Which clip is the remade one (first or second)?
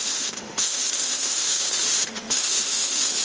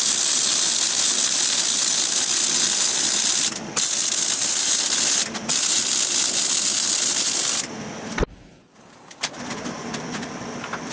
first